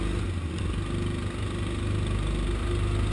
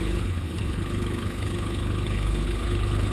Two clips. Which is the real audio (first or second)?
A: first